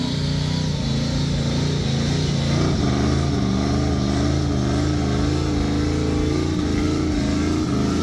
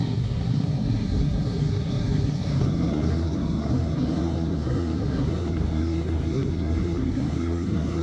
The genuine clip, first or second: first